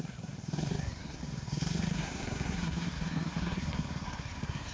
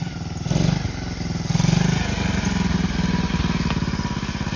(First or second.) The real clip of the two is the second